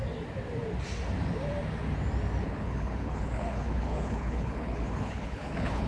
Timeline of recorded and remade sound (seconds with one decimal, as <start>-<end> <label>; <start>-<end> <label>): 0.0-2.4 recorded; 2.4-5.9 remade